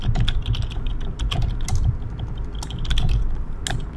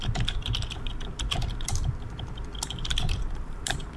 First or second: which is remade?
second